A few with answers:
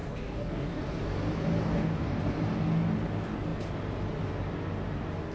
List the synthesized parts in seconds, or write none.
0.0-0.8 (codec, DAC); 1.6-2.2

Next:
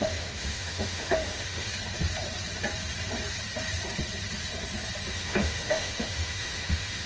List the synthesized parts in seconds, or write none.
0.0-1.7 (autoencoder, DAC-VAE); 5.1-7.1

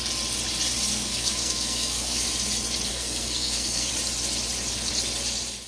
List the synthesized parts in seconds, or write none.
0.9-2.2 (codec, SNAC); 2.9-3.9

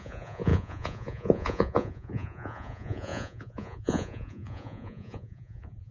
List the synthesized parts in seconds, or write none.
0.0-5.9 (vocoder, Vocos)